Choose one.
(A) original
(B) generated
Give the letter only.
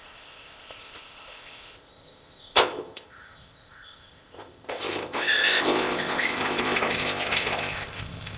B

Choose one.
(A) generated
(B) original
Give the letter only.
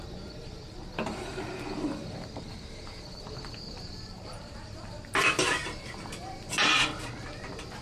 A